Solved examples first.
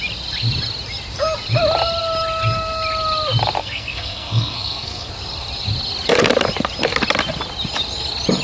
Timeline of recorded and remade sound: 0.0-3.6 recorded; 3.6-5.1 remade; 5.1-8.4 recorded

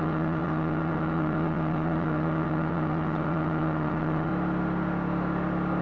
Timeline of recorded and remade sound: 0.0-4.3 remade; 4.3-5.8 recorded

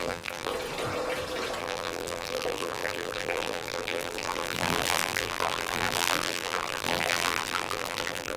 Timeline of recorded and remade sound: 0.0-0.5 remade; 0.5-1.6 recorded; 1.6-8.4 remade

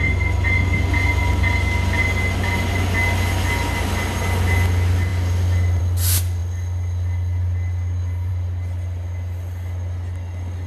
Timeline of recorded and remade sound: 0.0-10.7 recorded

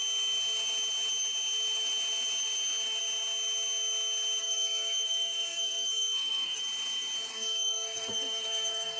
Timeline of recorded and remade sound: 0.0-4.4 recorded; 4.4-6.6 remade; 6.6-7.3 recorded; 7.3-9.0 remade